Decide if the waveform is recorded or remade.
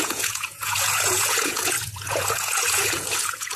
remade